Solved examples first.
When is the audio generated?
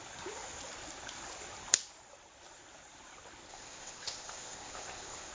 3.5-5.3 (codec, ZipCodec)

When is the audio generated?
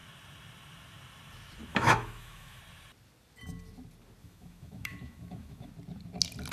1.7-2.6 (autoencoder, DAC-VAE); 4.2-5.7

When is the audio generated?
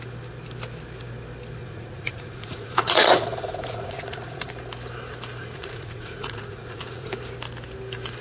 1.6-4.5 (vocoder, Vocos); 5.4-7.1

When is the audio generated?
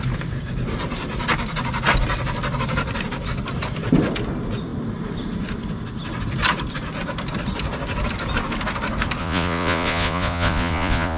9.2-11.2 (vocoder, Vocos)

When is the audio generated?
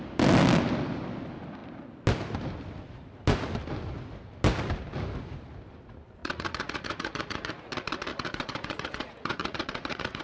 6.2-7.5 (vocoder, Vocos); 8.1-10.2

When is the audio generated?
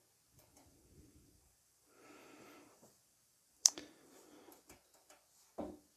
0.5-4.1 (vocoder, BigVGAN v2)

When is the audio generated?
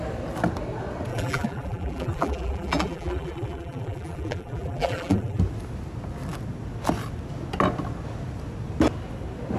1.1-5.4 (vocoder, BigVGAN v2)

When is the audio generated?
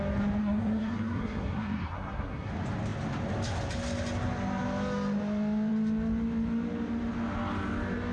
0.4-2.5 (codec, SNAC)